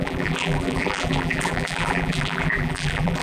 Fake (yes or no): yes